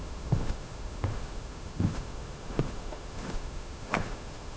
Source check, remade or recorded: remade